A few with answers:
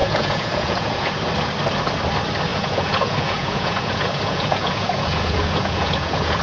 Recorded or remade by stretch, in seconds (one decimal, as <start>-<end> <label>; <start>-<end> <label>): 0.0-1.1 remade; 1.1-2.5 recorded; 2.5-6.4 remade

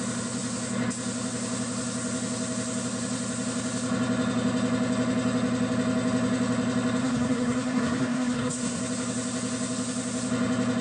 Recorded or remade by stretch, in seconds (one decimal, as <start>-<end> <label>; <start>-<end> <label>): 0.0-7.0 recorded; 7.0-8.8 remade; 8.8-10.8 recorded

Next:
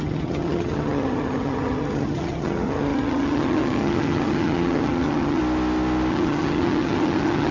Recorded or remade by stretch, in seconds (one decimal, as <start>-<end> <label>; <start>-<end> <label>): 0.0-5.4 remade; 5.4-6.1 recorded; 6.1-7.5 remade